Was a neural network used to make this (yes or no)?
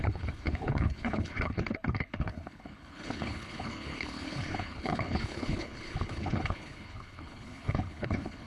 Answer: yes